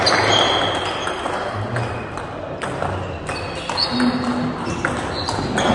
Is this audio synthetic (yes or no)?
no